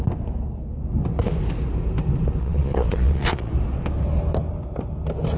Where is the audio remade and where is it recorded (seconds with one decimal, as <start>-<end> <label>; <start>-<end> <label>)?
0.0-2.4 recorded; 2.4-3.5 remade; 3.5-5.4 recorded